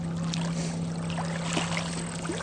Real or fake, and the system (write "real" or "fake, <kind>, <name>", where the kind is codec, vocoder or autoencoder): real